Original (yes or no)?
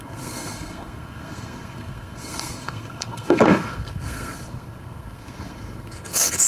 no